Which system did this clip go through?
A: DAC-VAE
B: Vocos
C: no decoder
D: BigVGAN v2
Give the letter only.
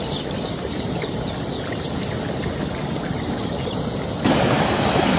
C